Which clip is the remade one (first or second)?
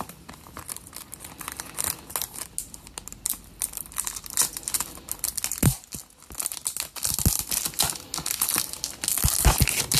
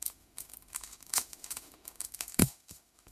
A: second